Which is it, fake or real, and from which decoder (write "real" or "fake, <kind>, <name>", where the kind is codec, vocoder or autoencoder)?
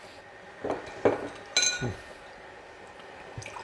real